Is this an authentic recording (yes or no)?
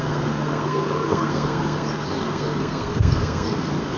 no